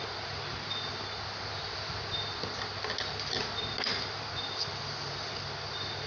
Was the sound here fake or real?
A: real